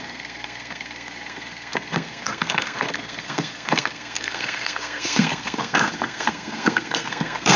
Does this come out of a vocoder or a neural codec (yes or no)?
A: yes